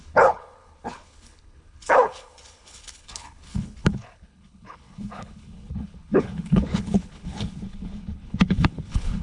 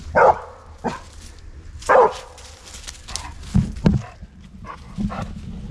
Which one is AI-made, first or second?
first